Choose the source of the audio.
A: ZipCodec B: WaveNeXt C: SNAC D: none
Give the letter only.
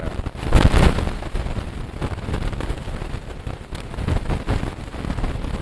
D